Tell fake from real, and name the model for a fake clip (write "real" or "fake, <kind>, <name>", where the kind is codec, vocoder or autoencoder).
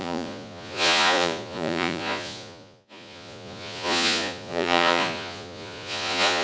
fake, vocoder, Vocos